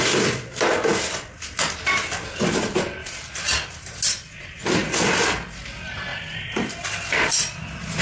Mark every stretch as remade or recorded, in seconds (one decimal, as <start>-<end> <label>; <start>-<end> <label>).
0.0-6.1 recorded; 6.1-6.7 remade; 6.7-8.0 recorded